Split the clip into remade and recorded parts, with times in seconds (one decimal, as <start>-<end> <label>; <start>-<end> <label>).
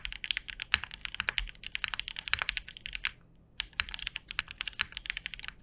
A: 0.0-5.6 recorded